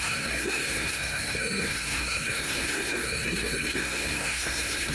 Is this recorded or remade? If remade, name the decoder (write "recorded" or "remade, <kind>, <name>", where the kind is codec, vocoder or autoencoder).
remade, codec, SNAC